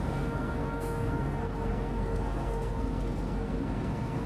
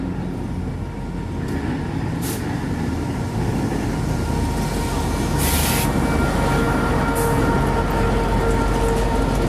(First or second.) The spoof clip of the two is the first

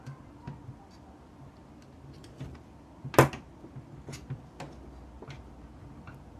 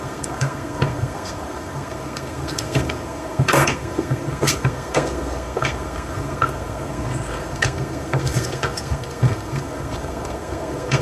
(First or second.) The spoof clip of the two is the second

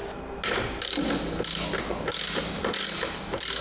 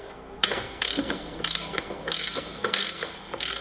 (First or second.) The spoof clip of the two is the second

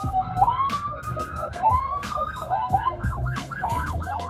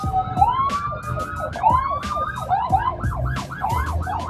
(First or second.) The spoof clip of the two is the first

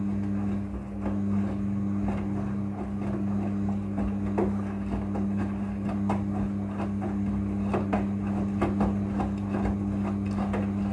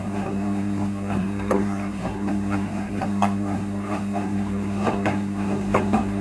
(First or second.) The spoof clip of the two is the second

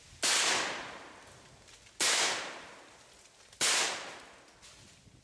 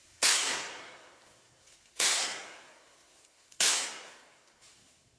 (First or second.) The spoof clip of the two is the second